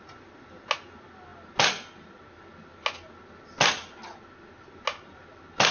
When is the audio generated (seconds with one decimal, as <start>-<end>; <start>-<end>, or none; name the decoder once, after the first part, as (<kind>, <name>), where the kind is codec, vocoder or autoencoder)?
none